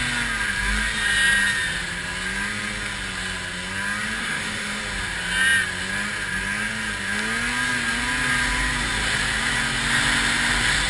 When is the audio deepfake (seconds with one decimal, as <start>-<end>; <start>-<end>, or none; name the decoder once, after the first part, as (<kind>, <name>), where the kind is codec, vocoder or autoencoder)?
4.2-4.8 (autoencoder, DAC-VAE)